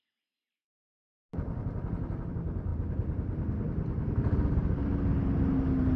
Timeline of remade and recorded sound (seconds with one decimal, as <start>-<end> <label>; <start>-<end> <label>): 0.0-6.0 recorded

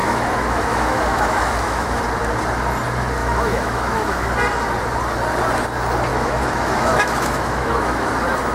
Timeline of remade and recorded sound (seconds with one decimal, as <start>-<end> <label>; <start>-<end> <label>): 0.0-2.0 remade; 2.0-3.2 recorded; 3.2-4.3 remade; 4.3-6.1 recorded; 6.1-8.1 remade; 8.1-8.5 recorded

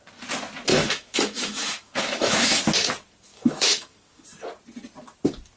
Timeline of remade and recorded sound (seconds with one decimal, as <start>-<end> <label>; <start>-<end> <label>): 0.0-0.7 recorded; 0.7-2.6 remade; 2.6-3.3 recorded; 3.3-4.2 remade; 4.2-5.6 recorded

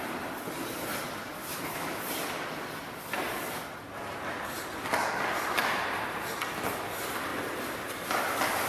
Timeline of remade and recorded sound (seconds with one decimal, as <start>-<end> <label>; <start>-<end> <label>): 0.0-1.4 recorded; 1.4-2.0 remade; 2.0-8.7 recorded

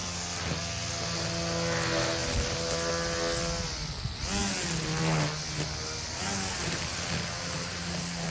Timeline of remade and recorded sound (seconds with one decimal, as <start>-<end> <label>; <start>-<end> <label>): 0.0-8.3 recorded

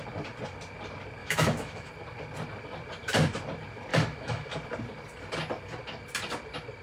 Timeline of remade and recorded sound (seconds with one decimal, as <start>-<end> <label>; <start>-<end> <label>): 0.0-1.2 recorded; 1.2-1.9 remade; 1.9-3.9 recorded; 3.9-4.5 remade; 4.5-6.8 recorded

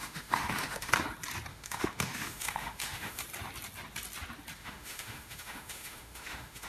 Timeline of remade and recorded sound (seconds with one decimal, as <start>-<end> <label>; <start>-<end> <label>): 0.0-0.9 remade; 0.9-1.5 recorded; 1.5-3.2 remade; 3.2-4.6 recorded; 4.6-6.7 remade

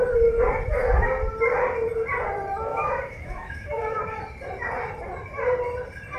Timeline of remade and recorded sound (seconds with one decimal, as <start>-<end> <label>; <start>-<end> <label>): 0.0-2.7 recorded; 2.7-4.0 remade; 4.0-6.2 recorded